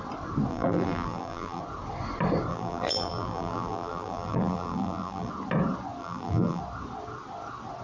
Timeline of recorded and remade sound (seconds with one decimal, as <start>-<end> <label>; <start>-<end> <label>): 0.0-0.5 recorded; 0.5-1.6 remade; 1.6-2.5 recorded; 2.5-5.3 remade; 5.3-6.0 recorded; 6.0-6.6 remade; 6.6-7.8 recorded